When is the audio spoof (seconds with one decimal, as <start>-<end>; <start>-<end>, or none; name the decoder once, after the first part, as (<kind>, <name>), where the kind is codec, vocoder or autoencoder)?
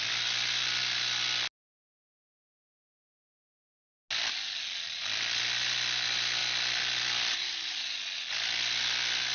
none